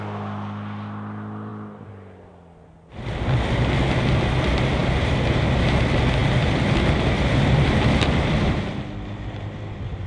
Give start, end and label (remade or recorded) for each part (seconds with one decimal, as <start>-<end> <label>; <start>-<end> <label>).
0.0-6.2 recorded; 6.2-8.6 remade; 8.6-10.1 recorded